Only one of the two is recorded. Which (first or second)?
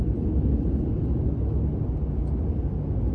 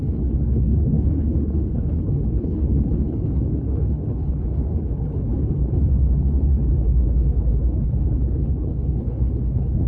first